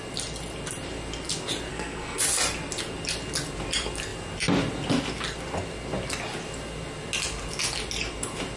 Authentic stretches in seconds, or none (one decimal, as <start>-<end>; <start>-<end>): 0.0-1.7; 2.2-8.6